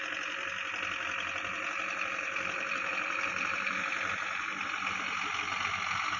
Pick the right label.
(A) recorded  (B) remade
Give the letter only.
A